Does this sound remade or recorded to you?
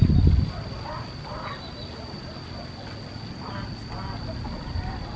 recorded